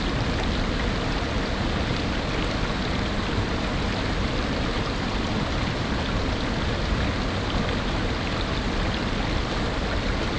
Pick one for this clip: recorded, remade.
recorded